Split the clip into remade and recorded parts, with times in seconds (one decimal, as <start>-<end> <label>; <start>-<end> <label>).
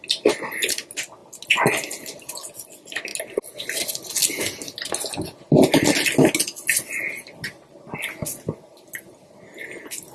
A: 0.0-10.1 recorded